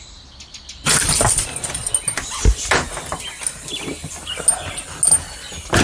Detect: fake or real real